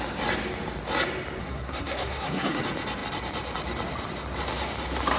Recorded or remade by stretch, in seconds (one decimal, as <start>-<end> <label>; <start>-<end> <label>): 0.0-1.4 recorded; 1.4-2.6 remade; 2.6-5.2 recorded